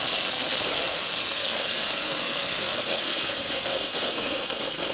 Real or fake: fake